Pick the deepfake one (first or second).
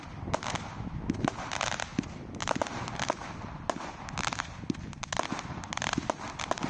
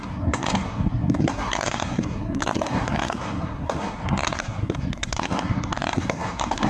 second